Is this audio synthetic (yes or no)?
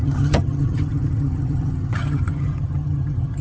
yes